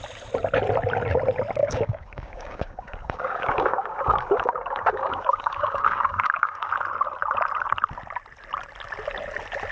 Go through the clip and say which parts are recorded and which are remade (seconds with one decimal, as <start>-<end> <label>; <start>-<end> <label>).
0.0-1.6 recorded; 1.6-6.7 remade; 6.7-9.7 recorded